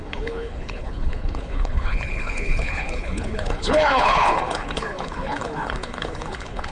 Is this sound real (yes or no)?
no